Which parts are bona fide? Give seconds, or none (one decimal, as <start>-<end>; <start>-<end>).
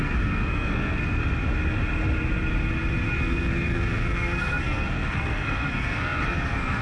1.2-3.1